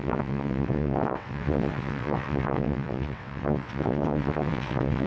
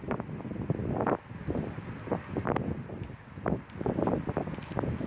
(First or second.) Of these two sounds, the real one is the second